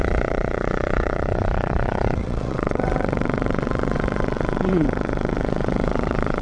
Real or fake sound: fake